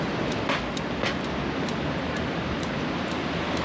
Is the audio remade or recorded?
recorded